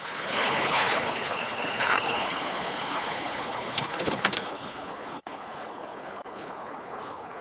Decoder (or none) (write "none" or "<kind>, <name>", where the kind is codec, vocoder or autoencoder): codec, HILCodec